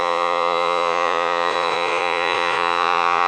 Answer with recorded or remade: remade